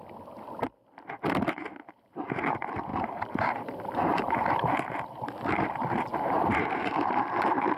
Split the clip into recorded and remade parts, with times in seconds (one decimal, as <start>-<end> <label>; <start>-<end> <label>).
0.0-2.9 recorded; 2.9-4.8 remade; 4.8-6.1 recorded; 6.1-7.8 remade